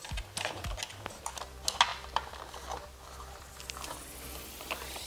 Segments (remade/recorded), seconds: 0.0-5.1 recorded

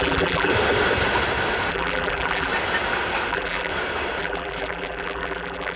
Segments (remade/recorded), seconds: 0.0-0.5 remade; 0.5-1.7 recorded; 1.7-2.5 remade; 2.5-3.3 recorded; 3.3-3.7 remade; 3.7-4.2 recorded; 4.2-5.8 remade

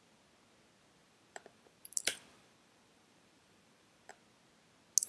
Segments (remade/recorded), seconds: 0.0-1.0 recorded; 1.0-4.1 remade; 4.1-5.1 recorded